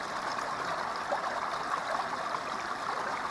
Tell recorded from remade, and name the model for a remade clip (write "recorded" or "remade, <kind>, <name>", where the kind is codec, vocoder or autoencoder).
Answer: recorded